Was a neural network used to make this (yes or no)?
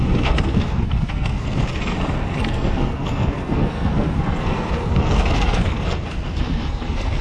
yes